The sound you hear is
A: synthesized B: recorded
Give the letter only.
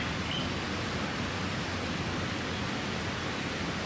B